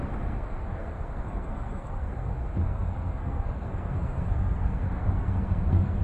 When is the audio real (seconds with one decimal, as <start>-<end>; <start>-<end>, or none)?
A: none